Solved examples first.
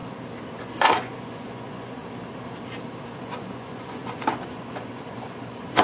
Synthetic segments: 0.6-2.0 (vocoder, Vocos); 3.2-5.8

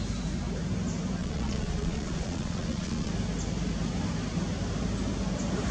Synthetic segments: 1.2-3.1 (vocoder, Vocos)

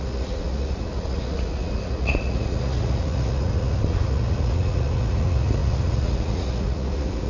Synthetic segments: 0.0-7.3 (vocoder, Vocos)